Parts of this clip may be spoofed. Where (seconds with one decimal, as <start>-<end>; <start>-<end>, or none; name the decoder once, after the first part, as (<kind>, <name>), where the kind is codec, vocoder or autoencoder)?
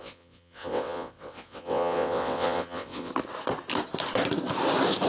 0.0-3.1 (vocoder, WaveNeXt)